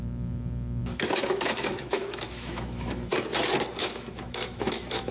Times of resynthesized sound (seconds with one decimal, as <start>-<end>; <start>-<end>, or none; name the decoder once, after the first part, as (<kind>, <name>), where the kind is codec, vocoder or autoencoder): 0.0-3.1 (autoencoder, DAC-VAE); 3.8-5.1